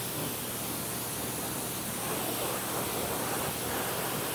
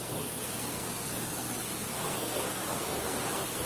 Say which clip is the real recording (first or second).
first